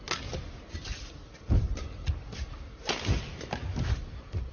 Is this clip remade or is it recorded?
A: recorded